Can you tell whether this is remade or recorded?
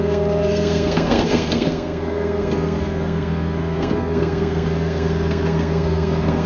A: remade